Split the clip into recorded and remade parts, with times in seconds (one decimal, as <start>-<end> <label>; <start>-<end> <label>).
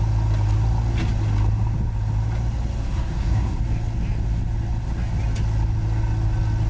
0.0-2.8 recorded; 2.8-3.6 remade; 3.6-6.7 recorded